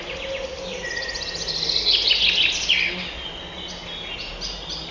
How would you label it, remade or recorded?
recorded